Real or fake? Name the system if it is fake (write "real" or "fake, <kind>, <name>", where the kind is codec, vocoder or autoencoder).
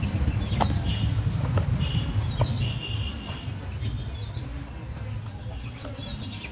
real